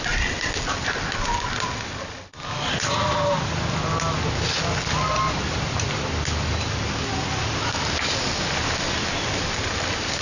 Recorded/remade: recorded